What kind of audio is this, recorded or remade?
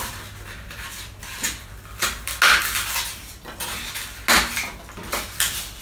recorded